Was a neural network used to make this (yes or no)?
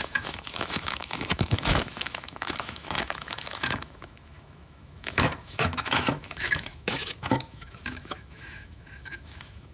yes